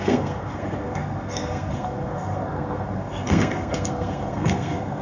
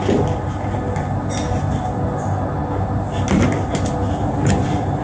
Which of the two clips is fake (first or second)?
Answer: first